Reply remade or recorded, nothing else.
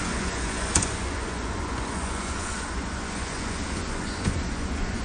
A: remade